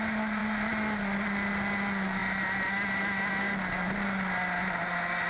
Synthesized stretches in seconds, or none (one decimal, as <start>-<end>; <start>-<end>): none

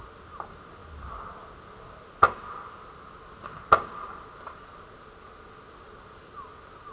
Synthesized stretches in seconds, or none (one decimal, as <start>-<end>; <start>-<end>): none

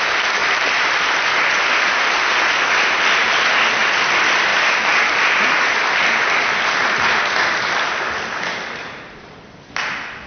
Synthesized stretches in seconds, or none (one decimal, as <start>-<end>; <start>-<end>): 0.4-1.2; 4.5-9.7

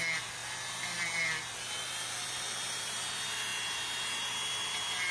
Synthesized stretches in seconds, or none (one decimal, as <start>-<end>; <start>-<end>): 0.0-3.5; 4.3-5.1

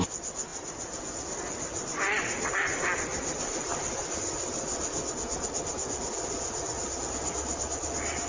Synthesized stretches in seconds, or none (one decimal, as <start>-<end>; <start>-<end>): none

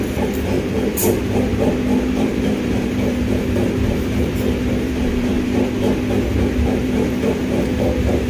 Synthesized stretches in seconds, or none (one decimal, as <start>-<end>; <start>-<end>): 0.0-5.3; 6.4-8.3

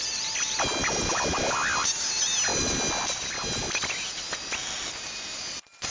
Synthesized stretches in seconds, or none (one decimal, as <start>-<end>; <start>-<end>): 0.0-1.4